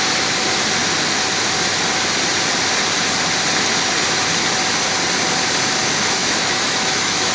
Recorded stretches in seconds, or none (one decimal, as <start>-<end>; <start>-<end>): 0.0-6.2